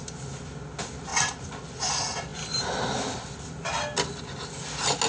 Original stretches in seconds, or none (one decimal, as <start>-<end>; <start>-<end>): 0.0-1.1; 1.6-5.1